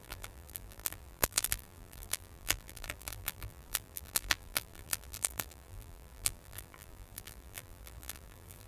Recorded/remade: remade